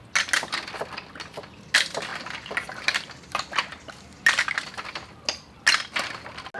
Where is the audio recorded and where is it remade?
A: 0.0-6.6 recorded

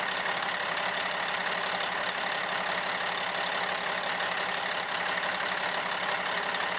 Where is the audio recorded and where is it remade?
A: 0.0-1.4 remade; 1.4-4.2 recorded; 4.2-6.8 remade

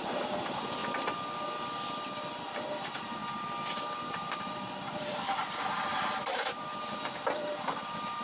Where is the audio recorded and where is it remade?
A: 0.0-0.8 remade; 0.8-2.4 recorded; 2.4-3.2 remade; 3.2-4.0 recorded; 4.0-8.2 remade

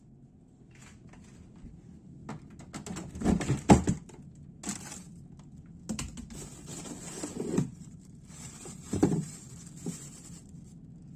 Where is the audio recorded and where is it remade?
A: 0.0-7.7 recorded; 7.7-9.3 remade; 9.3-11.2 recorded

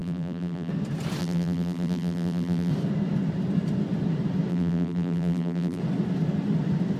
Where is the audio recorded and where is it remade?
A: 0.0-0.7 remade; 0.7-1.2 recorded; 1.2-2.7 remade; 2.7-4.5 recorded; 4.5-5.8 remade; 5.8-7.0 recorded

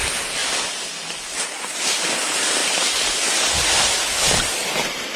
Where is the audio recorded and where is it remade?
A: 0.0-0.4 recorded; 0.4-1.7 remade; 1.7-2.6 recorded; 2.6-3.2 remade; 3.2-5.2 recorded

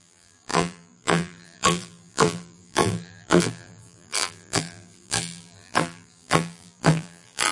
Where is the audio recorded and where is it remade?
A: 0.0-7.5 remade

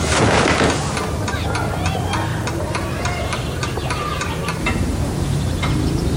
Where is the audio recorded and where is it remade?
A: 0.0-2.3 recorded; 2.3-6.2 remade